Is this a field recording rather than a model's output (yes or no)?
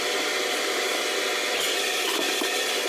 yes